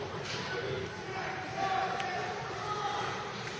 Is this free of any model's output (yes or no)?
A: no